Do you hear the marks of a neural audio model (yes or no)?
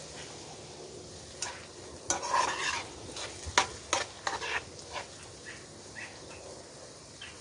no